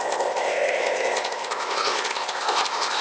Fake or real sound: fake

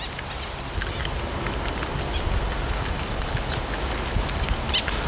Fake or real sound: real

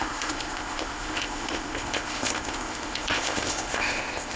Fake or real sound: fake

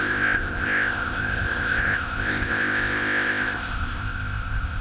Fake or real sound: fake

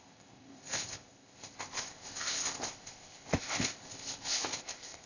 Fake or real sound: fake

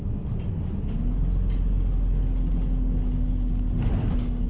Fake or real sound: real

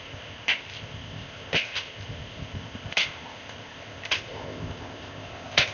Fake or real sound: fake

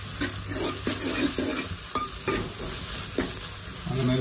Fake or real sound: real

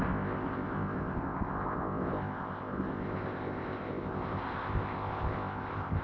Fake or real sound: fake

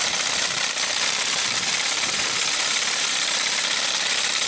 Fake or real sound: real